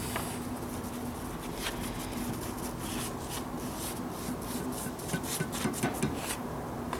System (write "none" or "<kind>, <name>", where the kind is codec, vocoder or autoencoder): none